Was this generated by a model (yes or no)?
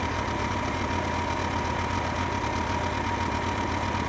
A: no